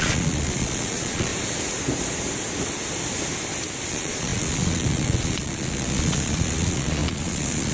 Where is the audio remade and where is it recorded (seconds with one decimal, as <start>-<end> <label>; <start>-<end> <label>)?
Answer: 0.0-1.3 remade; 1.3-3.9 recorded; 3.9-7.7 remade